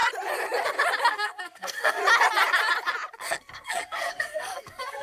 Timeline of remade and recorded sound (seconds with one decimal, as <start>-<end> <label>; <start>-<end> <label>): 0.0-1.1 recorded; 1.1-2.0 remade; 2.0-3.2 recorded; 3.2-5.0 remade